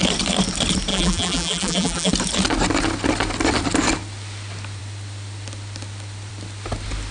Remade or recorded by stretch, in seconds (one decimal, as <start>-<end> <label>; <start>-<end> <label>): 0.0-0.9 recorded; 0.9-2.1 remade; 2.1-7.1 recorded